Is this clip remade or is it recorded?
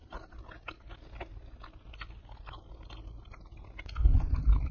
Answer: recorded